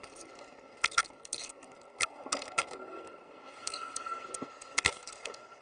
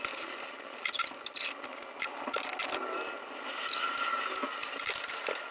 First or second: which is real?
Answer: second